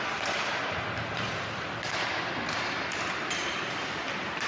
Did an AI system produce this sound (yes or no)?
yes